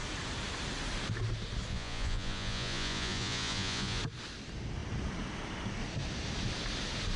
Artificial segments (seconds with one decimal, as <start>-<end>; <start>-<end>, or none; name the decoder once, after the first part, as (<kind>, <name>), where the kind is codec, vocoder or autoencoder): 1.7-4.0 (vocoder, Vocos)